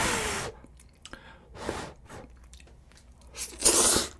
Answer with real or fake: real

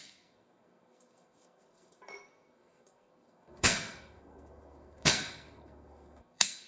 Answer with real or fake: fake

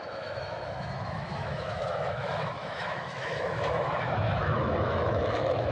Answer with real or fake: fake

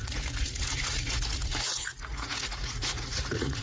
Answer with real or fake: fake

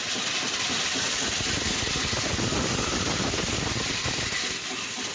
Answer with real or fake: real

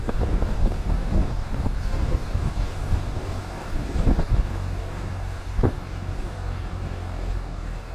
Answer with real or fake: fake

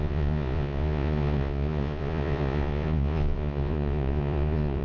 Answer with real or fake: fake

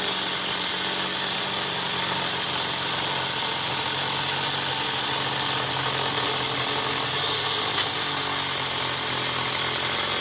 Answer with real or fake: real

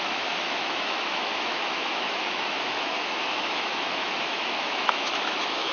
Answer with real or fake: fake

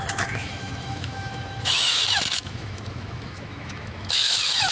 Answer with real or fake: fake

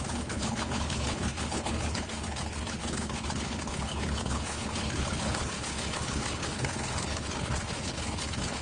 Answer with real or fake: fake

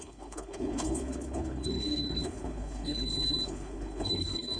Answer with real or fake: fake